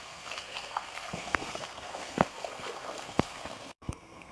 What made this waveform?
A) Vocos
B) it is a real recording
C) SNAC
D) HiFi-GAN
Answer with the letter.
C